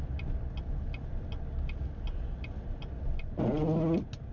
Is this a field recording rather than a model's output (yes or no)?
yes